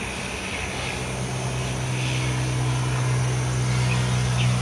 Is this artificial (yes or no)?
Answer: no